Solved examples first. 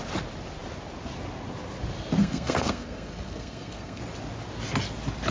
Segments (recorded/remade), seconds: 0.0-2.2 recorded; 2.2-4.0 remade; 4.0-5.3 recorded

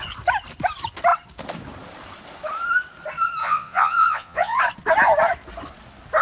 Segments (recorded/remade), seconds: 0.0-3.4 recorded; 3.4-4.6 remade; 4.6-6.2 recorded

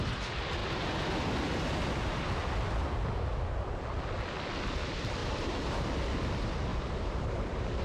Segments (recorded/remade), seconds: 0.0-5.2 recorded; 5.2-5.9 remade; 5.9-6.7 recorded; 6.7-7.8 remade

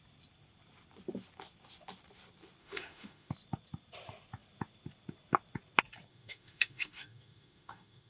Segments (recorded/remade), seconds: 0.0-2.6 recorded; 2.6-3.3 remade; 3.3-6.1 recorded; 6.1-8.1 remade

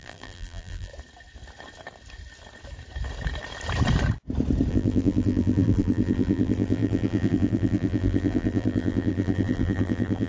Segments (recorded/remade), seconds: 0.0-0.9 remade; 0.9-4.7 recorded; 4.7-10.3 remade

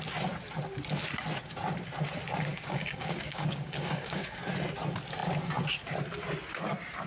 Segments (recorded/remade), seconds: 0.0-2.5 recorded; 2.5-4.5 remade; 4.5-7.1 recorded

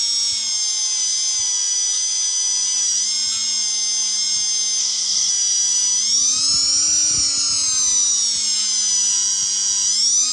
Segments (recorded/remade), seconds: 0.0-4.8 recorded; 4.8-5.3 remade; 5.3-10.3 recorded

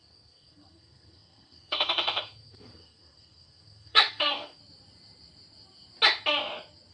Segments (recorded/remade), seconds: 0.0-4.6 remade; 4.6-6.9 recorded